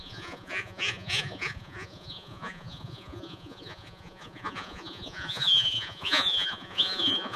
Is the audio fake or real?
fake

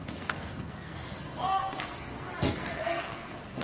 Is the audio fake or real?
fake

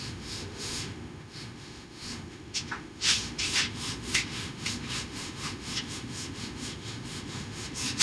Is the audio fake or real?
fake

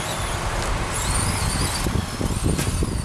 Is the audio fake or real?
real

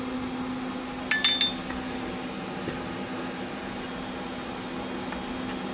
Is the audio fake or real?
real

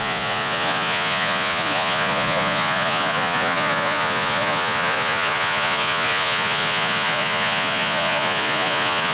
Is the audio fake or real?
fake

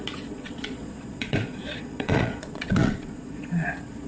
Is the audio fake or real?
fake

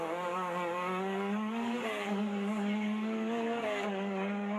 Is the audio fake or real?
fake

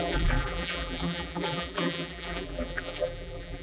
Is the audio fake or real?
fake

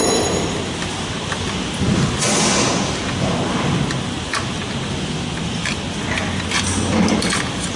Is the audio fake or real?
real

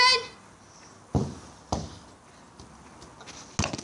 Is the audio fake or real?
real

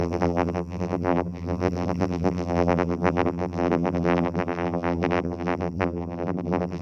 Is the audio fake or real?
fake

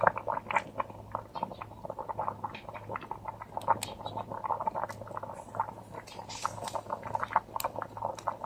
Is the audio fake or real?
real